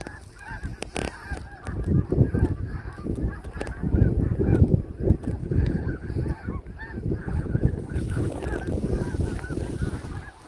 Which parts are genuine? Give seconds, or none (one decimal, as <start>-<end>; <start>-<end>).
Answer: 0.0-5.4; 6.1-7.2; 8.4-10.5